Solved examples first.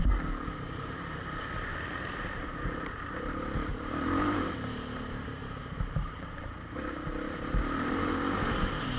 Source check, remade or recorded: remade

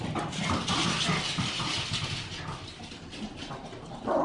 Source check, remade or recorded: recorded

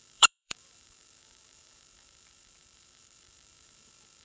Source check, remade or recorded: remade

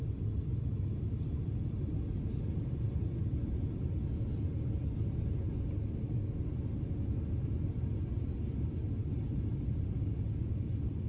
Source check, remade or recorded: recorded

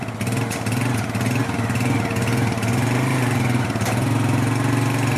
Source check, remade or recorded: recorded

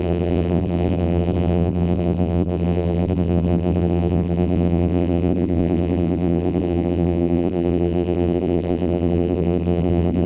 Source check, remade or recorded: remade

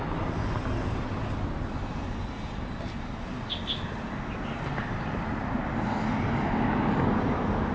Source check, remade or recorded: recorded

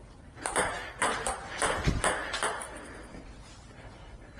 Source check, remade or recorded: remade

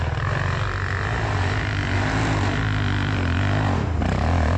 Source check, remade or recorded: recorded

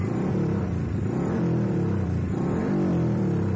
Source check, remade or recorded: remade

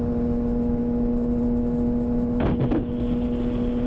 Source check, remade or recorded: recorded